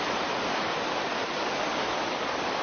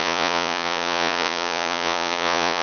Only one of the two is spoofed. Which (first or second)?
second